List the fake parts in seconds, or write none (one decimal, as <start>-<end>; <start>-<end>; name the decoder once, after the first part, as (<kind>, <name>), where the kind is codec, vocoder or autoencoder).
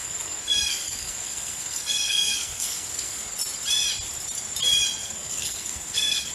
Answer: 0.0-3.3 (codec, SNAC); 5.0-6.3